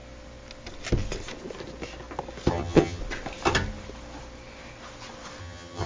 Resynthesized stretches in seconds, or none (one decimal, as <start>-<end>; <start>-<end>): 2.5-3.0; 5.4-5.9